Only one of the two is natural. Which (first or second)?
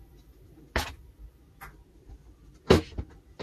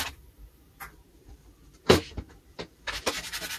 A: first